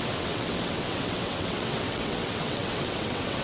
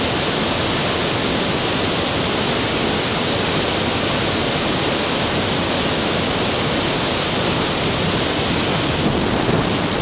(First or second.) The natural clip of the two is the second